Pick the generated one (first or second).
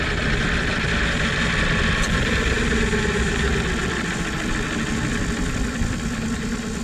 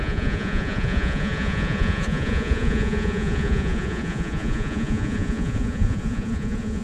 second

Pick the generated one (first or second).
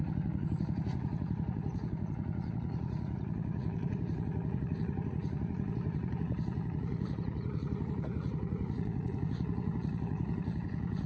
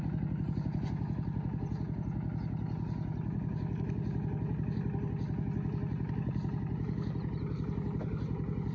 first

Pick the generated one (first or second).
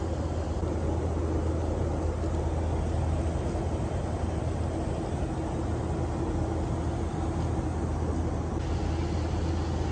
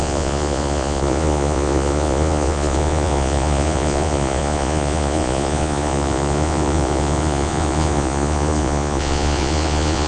second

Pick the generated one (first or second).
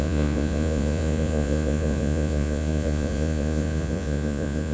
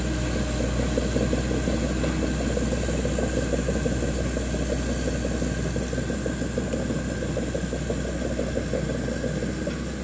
first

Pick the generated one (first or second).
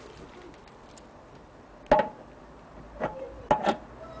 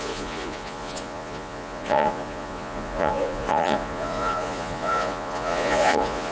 second